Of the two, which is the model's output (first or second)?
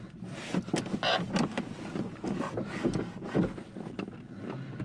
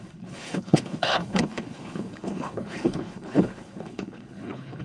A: second